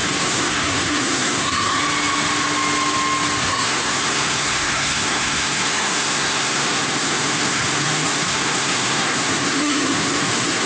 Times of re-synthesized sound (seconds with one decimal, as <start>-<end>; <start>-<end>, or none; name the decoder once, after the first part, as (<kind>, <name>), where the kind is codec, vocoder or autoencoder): 0.0-1.8 (codec, SNAC); 3.4-10.7